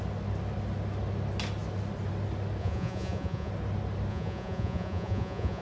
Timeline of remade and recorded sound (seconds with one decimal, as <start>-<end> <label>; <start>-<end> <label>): 0.0-2.6 recorded; 2.6-3.5 remade; 3.5-4.1 recorded; 4.1-5.6 remade